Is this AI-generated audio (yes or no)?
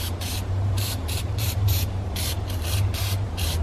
yes